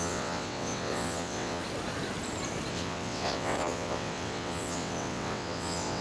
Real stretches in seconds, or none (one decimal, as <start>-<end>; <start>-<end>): 1.6-2.7